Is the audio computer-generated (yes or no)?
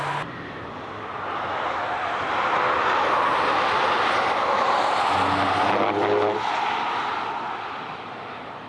no